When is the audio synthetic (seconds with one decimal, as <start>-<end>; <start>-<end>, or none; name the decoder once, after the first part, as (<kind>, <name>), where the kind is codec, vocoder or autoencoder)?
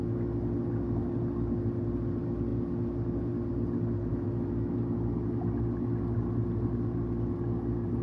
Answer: 4.1-4.7 (autoencoder, DAC-VAE)